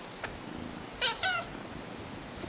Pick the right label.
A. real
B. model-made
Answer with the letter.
A